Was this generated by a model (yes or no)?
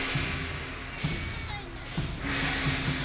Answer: no